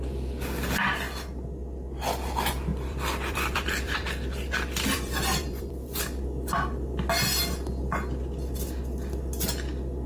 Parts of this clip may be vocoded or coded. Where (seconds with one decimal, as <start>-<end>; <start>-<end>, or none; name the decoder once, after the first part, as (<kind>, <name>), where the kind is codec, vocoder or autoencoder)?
2.7-5.7 (vocoder, BigVGAN v2)